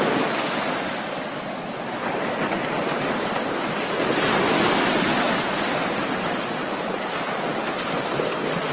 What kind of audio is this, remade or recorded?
recorded